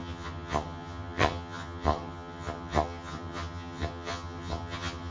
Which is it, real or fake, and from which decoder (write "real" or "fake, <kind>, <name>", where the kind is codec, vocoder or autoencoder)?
fake, vocoder, HiFi-GAN